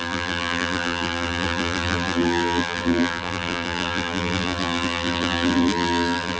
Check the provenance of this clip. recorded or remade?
remade